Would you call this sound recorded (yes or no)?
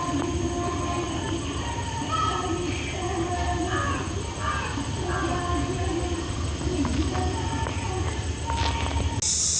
yes